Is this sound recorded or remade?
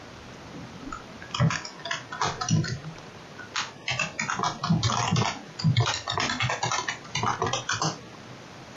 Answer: recorded